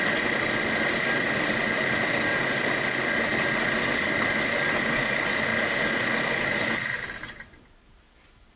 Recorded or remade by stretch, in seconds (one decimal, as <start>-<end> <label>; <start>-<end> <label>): 0.0-5.5 remade; 5.5-7.3 recorded; 7.3-8.6 remade